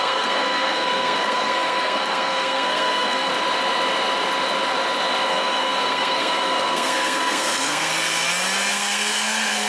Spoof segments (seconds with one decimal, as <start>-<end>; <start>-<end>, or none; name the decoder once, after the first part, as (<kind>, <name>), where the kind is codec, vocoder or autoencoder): 0.0-3.3 (codec, SNAC); 5.3-7.9; 8.7-9.7